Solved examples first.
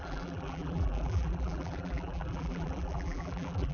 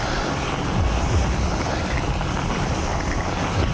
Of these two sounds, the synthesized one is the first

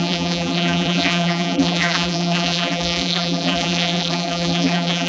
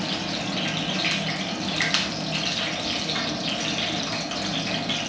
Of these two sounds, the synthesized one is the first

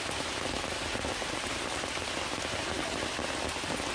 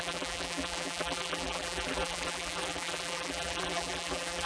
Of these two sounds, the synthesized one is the second